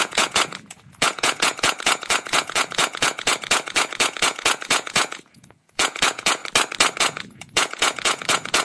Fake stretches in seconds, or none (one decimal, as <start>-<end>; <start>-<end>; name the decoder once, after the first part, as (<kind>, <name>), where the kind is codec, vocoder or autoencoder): 0.0-6.4 (vocoder, Vocos); 7.0-8.6